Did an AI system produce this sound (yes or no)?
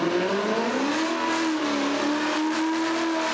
no